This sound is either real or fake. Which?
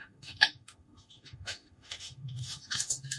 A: fake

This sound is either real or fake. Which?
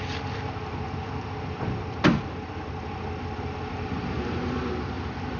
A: real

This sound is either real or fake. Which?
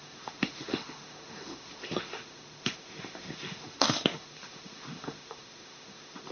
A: fake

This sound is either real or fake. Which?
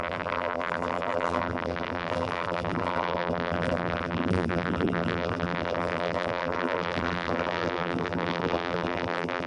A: fake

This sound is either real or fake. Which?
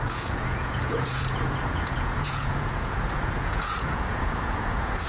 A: fake